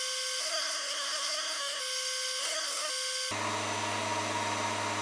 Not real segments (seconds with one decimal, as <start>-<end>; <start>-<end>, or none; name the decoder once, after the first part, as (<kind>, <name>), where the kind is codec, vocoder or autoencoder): 0.4-1.8 (codec, SNAC); 2.4-2.9